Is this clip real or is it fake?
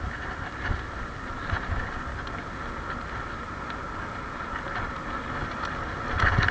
real